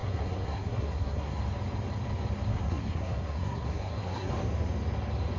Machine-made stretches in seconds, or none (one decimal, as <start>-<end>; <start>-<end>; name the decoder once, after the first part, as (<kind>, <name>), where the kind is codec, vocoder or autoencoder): 0.0-1.4 (codec, SNAC); 2.5-4.3